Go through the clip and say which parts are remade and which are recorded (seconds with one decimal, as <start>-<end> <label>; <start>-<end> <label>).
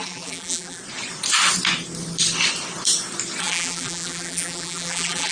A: 0.0-0.8 remade; 0.8-3.4 recorded; 3.4-5.3 remade